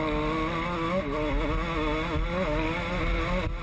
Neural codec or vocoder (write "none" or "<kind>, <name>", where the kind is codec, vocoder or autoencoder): none